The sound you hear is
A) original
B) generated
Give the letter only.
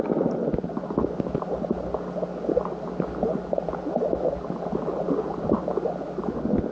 A